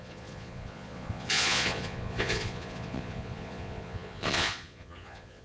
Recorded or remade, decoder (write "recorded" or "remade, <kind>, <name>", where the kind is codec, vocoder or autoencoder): remade, vocoder, Vocos